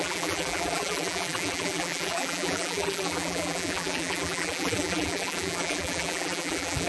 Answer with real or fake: fake